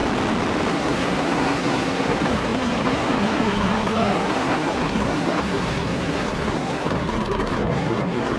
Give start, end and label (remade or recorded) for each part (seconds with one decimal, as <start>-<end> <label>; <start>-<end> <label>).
0.0-0.7 recorded; 0.7-8.4 remade